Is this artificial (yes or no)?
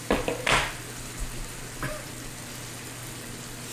no